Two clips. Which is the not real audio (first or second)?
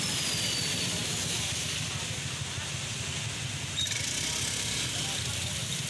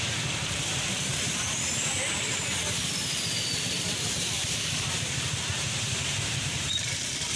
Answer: second